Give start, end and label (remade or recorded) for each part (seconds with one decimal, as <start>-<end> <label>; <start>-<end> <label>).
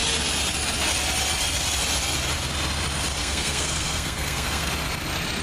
0.0-3.2 recorded; 3.2-4.7 remade; 4.7-5.4 recorded